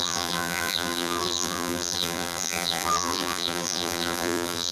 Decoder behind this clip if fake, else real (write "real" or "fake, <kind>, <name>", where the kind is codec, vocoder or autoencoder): fake, vocoder, BigVGAN v2